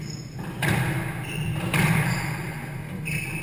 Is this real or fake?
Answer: real